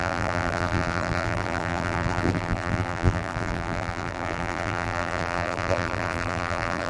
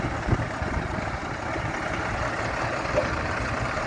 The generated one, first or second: first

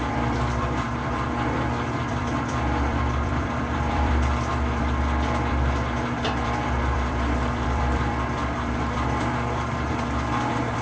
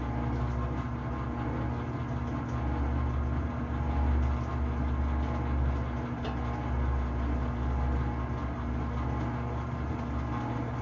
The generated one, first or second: first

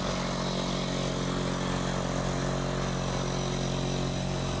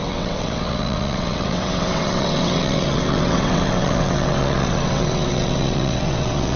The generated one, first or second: second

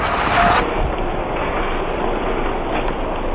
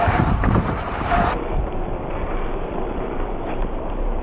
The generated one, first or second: second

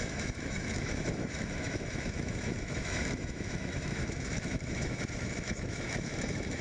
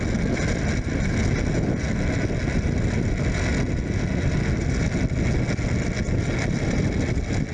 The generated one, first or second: first